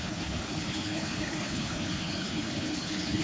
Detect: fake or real fake